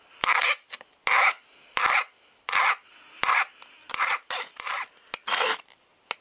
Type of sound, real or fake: real